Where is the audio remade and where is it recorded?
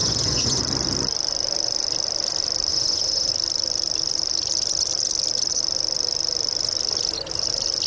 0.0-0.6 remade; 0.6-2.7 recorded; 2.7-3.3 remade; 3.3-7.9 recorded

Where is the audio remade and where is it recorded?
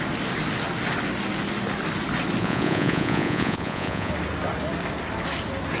0.0-2.4 recorded; 2.4-4.1 remade; 4.1-5.8 recorded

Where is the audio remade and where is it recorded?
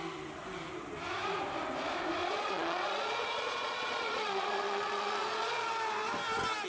0.0-2.2 recorded; 2.2-5.7 remade; 5.7-6.7 recorded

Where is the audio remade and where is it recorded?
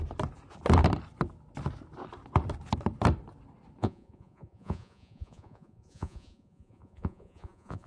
0.0-3.8 recorded; 3.8-7.9 remade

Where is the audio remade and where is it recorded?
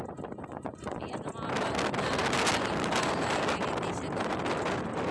0.0-0.5 recorded; 0.5-1.1 remade; 1.1-5.1 recorded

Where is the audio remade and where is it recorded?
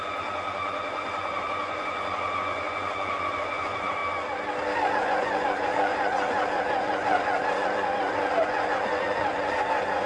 0.0-4.0 remade; 4.0-4.9 recorded; 4.9-10.1 remade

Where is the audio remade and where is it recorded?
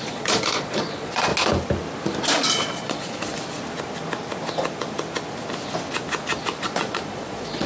0.0-1.3 remade; 1.3-2.5 recorded; 2.5-3.3 remade; 3.3-6.6 recorded; 6.6-7.7 remade